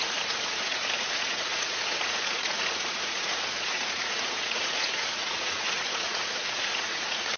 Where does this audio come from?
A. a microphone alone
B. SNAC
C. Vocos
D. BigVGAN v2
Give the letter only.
C